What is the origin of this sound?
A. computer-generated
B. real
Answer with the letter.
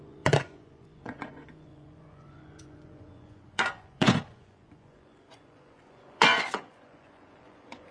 A